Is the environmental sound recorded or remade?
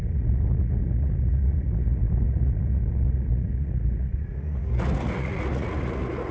remade